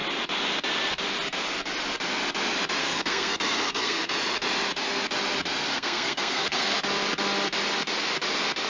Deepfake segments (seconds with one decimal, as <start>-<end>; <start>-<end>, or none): 2.8-4.1; 5.7-6.8